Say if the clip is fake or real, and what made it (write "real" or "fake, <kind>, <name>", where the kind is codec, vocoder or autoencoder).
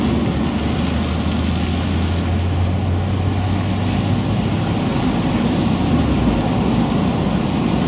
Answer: real